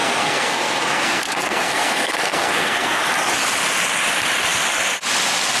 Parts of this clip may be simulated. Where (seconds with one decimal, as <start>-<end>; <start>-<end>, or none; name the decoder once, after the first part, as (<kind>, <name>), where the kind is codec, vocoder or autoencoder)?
0.0-3.0 (codec, SNAC)